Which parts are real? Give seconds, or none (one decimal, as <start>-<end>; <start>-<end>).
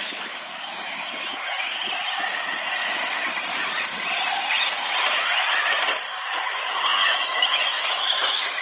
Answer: 1.7-6.2